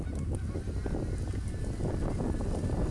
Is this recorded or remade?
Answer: recorded